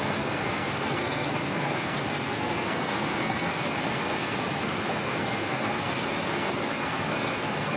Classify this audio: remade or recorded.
remade